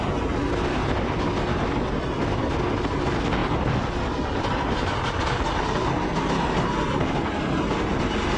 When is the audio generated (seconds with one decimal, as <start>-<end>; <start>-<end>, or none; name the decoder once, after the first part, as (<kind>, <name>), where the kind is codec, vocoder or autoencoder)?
none